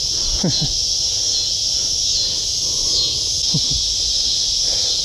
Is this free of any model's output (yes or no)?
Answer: yes